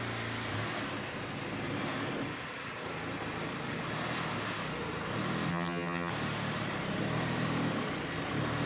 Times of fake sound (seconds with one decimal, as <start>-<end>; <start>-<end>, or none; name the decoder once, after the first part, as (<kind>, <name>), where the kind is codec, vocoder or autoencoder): 5.5-6.1 (vocoder, HiFi-GAN)